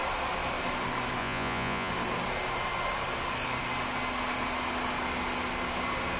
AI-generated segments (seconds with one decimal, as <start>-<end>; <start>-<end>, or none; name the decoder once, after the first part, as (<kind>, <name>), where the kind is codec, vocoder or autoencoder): 1.2-1.9 (vocoder, Vocos)